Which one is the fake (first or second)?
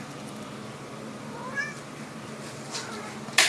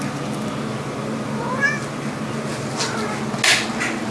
first